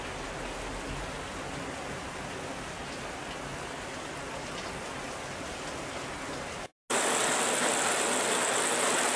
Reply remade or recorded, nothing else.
recorded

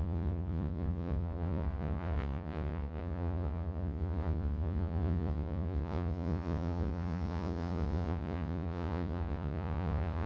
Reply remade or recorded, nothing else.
remade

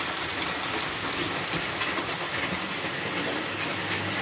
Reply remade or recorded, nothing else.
recorded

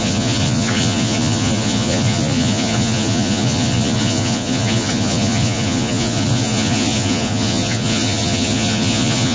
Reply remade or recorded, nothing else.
remade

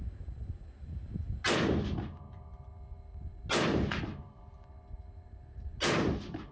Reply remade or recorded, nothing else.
recorded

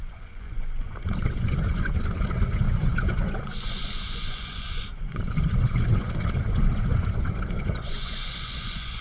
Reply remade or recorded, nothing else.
remade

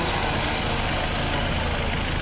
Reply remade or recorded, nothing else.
recorded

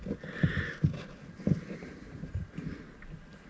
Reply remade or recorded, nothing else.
recorded